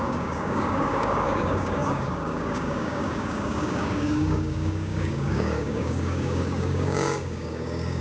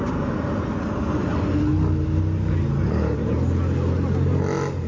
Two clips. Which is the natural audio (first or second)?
second